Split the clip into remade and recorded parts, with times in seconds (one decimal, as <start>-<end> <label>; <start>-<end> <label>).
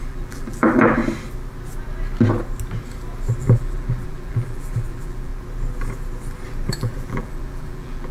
0.0-1.0 remade; 1.0-3.4 recorded; 3.4-5.3 remade; 5.3-6.7 recorded; 6.7-8.1 remade